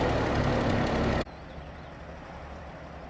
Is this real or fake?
fake